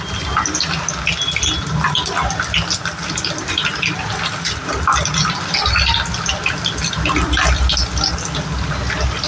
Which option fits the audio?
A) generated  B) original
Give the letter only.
B